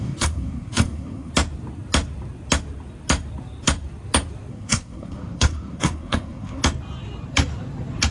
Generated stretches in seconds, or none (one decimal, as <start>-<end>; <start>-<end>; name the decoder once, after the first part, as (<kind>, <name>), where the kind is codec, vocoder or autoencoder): 0.0-1.3 (codec, SNAC); 4.5-6.6